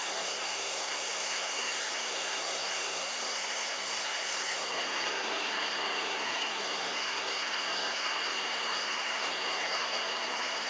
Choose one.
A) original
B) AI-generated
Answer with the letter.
B